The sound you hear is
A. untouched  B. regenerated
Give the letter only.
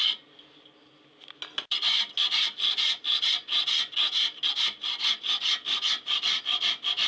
A